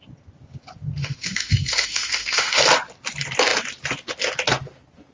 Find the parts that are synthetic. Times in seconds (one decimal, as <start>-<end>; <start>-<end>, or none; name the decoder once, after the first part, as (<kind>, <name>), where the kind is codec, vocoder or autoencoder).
1.0-2.6 (autoencoder, DAC-VAE)

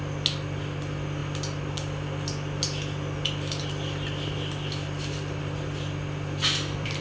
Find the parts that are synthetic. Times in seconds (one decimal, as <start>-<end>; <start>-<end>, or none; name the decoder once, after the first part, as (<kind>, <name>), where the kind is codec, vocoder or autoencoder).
none

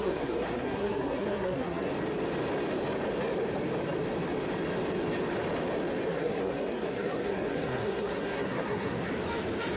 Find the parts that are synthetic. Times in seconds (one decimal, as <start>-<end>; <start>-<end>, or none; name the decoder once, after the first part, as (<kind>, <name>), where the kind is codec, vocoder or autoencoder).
0.0-1.9 (codec, SNAC); 6.1-9.1

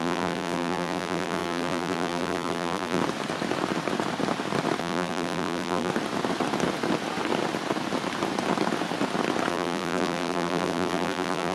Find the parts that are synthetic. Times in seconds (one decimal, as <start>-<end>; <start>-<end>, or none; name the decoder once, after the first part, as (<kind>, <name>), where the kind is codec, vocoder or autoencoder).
0.0-3.0 (vocoder, BigVGAN v2); 4.8-5.9; 9.5-11.5

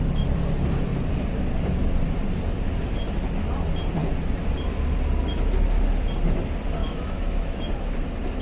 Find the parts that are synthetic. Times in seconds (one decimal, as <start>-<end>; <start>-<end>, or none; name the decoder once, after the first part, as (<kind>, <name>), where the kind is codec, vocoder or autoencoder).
6.8-7.6 (autoencoder, DAC-VAE)

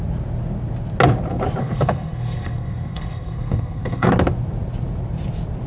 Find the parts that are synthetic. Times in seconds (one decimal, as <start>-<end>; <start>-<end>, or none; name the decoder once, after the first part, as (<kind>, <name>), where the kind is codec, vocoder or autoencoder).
1.6-4.1 (codec, SNAC)